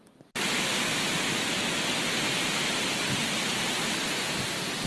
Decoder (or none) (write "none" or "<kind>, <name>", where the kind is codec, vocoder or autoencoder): none